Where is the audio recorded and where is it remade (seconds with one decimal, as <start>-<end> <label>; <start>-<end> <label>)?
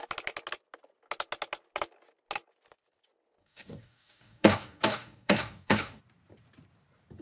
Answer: 0.0-3.4 recorded; 3.4-6.0 remade; 6.0-7.2 recorded